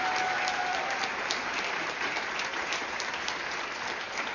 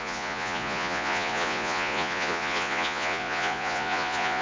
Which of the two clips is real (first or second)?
first